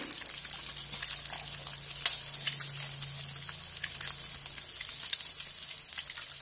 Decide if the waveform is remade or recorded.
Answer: recorded